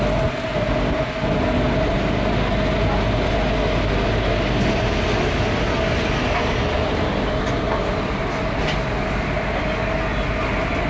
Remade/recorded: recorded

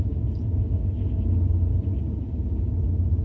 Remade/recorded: recorded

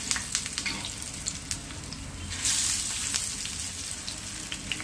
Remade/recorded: recorded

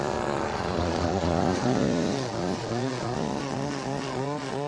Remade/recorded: remade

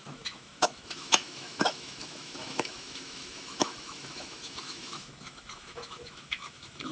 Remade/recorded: remade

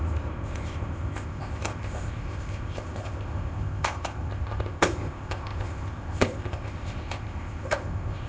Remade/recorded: remade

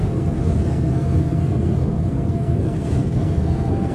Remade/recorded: remade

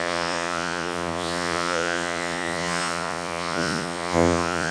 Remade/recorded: remade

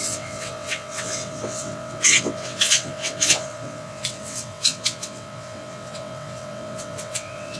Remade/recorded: remade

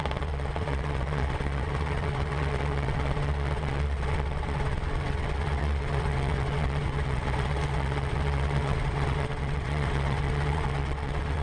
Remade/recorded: remade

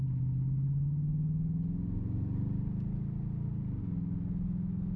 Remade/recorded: recorded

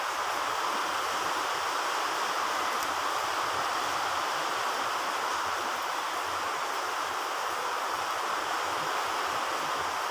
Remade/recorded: recorded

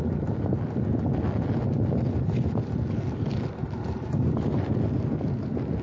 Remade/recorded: recorded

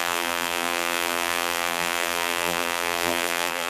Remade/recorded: remade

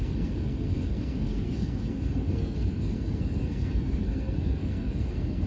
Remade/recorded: remade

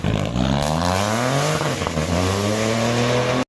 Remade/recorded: recorded